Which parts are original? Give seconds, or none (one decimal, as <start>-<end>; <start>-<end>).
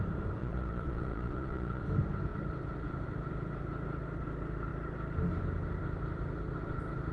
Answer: 0.0-0.4; 1.8-7.1